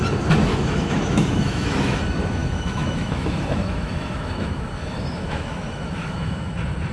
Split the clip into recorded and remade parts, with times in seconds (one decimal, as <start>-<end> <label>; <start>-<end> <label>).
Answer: 0.0-0.5 recorded; 0.5-2.0 remade; 2.0-2.4 recorded; 2.4-6.5 remade; 6.5-6.9 recorded